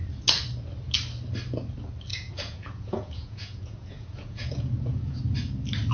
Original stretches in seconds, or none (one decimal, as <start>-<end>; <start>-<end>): 0.0-2.1; 5.2-5.9